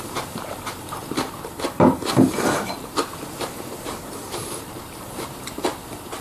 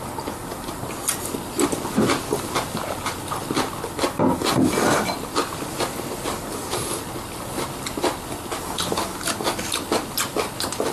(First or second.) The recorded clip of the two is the second